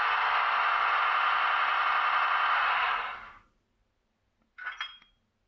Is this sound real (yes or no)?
yes